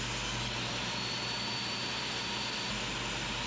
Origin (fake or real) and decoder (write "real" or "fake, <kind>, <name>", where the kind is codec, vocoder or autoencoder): real